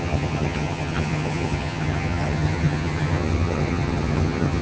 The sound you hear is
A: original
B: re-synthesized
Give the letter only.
B